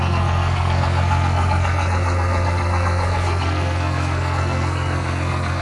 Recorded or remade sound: remade